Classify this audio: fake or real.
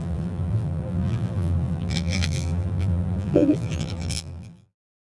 fake